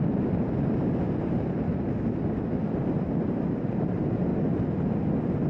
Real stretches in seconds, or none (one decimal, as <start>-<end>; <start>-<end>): 0.0-5.5